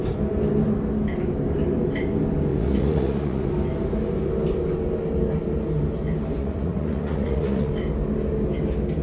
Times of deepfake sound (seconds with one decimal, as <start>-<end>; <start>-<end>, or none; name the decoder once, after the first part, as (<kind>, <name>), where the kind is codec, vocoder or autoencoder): 2.5-3.5 (vocoder, Vocos); 6.4-7.7